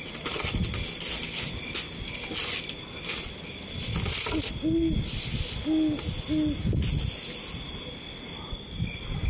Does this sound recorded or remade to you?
recorded